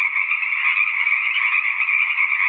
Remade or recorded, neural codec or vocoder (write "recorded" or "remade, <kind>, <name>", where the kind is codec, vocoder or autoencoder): recorded